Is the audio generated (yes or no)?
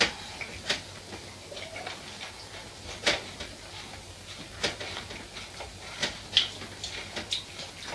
no